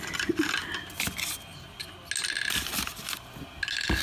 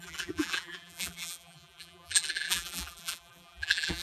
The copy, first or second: second